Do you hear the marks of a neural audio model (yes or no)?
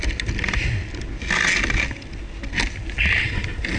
no